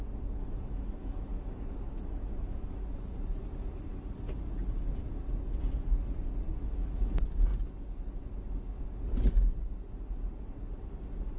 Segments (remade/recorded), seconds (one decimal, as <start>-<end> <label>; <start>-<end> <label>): 0.0-0.4 recorded; 0.4-2.8 remade; 2.8-6.5 recorded; 6.5-7.1 remade; 7.1-11.4 recorded